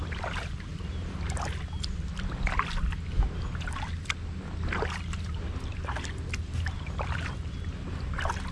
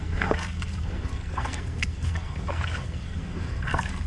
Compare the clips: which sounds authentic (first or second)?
first